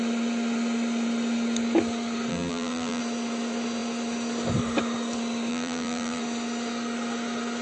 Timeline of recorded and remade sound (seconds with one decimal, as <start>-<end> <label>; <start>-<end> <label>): 0.0-2.3 recorded; 2.3-3.0 remade; 3.0-5.5 recorded; 5.5-6.2 remade; 6.2-7.6 recorded